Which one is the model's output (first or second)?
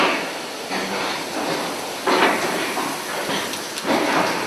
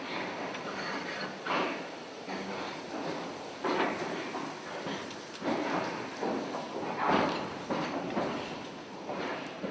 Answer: second